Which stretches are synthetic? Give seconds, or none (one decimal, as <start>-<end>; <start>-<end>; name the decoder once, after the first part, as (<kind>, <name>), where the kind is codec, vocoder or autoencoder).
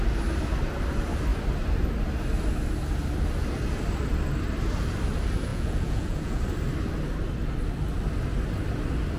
5.5-6.4 (vocoder, Vocos)